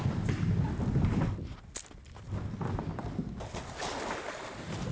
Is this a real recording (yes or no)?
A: yes